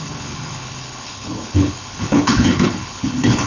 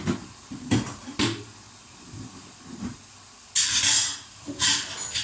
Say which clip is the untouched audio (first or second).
second